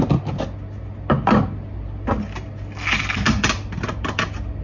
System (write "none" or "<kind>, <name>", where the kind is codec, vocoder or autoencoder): none